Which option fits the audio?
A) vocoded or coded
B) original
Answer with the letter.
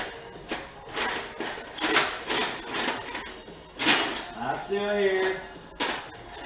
B